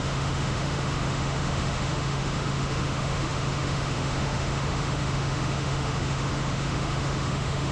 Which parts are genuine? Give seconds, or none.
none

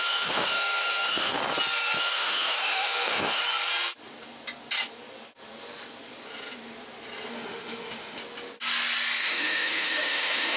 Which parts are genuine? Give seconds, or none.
1.4-2.0; 3.4-7.3; 8.2-9.2

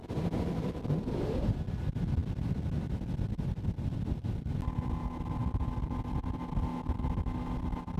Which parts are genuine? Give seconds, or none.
0.0-8.0

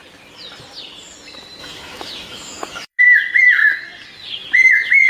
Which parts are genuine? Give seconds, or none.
0.0-1.6; 3.0-5.1